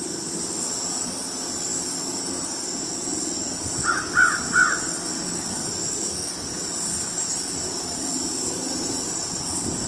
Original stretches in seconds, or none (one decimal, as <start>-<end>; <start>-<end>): 0.0-9.9